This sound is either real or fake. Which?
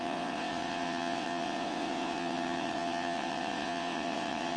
fake